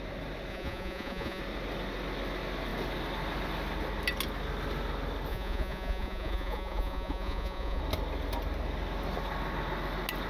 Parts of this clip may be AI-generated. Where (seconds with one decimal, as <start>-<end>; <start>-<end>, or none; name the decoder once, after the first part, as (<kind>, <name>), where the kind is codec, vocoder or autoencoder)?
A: 0.5-1.4 (vocoder, Vocos); 5.3-7.8